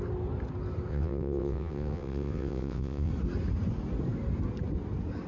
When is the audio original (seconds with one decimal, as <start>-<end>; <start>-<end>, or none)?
0.0-0.9; 3.1-5.3